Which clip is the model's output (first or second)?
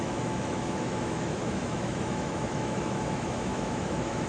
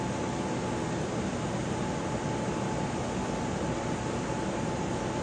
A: first